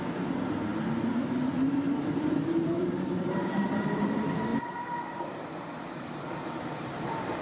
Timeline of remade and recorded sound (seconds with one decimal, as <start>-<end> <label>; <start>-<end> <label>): 0.0-0.7 remade; 0.7-2.8 recorded; 2.8-7.4 remade